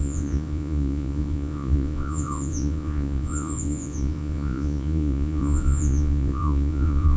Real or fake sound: fake